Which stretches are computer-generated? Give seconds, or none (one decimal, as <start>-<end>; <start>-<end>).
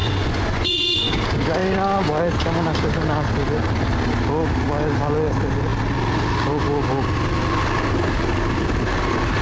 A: 0.0-1.1